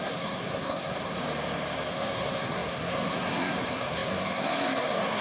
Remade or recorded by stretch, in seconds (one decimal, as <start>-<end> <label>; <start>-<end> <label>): 0.0-1.2 remade; 1.2-1.9 recorded; 1.9-5.2 remade